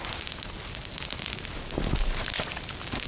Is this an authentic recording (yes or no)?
yes